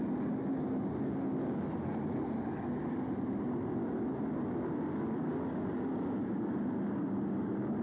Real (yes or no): yes